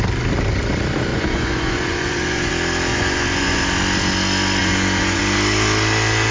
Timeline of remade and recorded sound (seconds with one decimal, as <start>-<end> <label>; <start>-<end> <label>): 0.0-1.1 recorded; 1.1-2.5 remade; 2.5-2.9 recorded; 2.9-3.6 remade; 3.6-4.6 recorded; 4.6-5.2 remade; 5.2-6.3 recorded